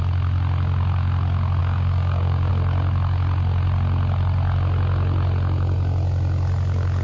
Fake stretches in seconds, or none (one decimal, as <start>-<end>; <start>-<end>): 1.6-2.5